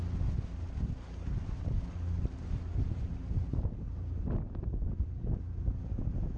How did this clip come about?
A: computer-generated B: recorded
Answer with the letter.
B